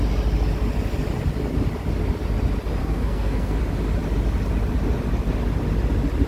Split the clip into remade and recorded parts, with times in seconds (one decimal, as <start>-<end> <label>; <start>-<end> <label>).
0.0-2.8 recorded; 2.8-3.6 remade; 3.6-6.3 recorded